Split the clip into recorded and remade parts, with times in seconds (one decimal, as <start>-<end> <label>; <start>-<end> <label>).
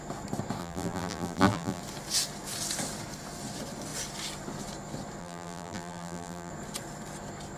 0.0-0.6 recorded; 0.6-1.8 remade; 1.8-5.2 recorded; 5.2-6.5 remade; 6.5-7.6 recorded